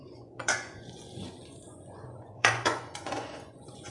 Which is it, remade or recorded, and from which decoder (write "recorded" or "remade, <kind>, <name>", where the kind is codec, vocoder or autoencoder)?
remade, vocoder, Vocos